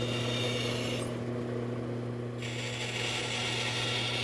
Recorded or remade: recorded